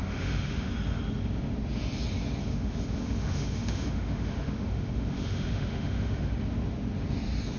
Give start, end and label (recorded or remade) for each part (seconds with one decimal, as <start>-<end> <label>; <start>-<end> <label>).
0.0-0.7 remade; 0.7-2.4 recorded; 2.4-6.3 remade; 6.3-7.6 recorded